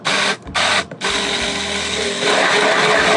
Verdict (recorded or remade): recorded